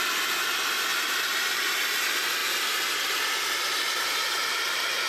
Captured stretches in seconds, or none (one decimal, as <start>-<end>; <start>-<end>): 0.0-0.9; 1.8-4.4